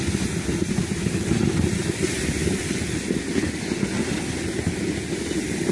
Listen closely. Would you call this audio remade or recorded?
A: recorded